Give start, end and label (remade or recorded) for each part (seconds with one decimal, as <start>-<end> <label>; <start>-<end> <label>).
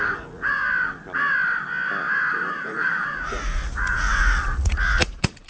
0.0-0.6 remade; 0.6-2.3 recorded; 2.3-5.5 remade